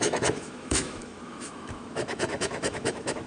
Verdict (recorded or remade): remade